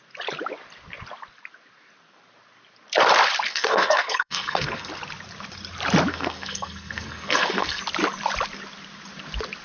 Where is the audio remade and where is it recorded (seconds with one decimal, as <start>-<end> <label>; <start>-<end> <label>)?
0.0-3.5 recorded; 3.5-4.9 remade; 4.9-6.1 recorded; 6.1-7.8 remade; 7.8-9.6 recorded